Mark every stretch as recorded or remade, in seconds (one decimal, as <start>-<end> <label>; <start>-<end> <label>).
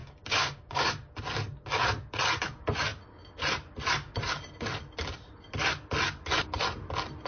0.0-0.9 remade; 0.9-7.3 recorded